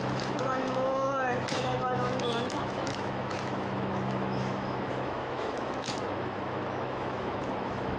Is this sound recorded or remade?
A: remade